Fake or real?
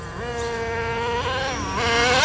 real